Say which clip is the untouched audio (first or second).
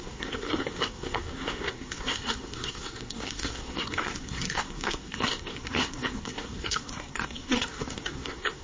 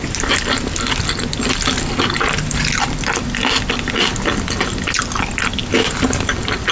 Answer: second